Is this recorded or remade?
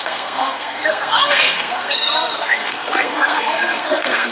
remade